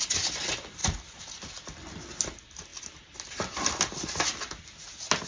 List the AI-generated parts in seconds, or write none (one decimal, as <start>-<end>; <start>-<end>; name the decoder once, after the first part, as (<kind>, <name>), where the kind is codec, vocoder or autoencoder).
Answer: none